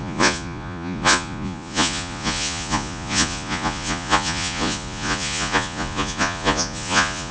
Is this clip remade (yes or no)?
yes